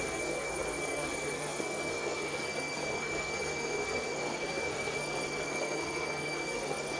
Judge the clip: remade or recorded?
remade